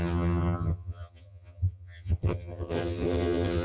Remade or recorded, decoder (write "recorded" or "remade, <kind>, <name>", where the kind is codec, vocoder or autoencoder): remade, vocoder, HiFi-GAN